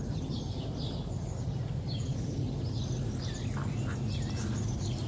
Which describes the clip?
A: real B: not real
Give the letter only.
A